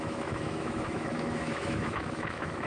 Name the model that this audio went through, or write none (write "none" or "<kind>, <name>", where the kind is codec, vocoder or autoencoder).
autoencoder, DAC-VAE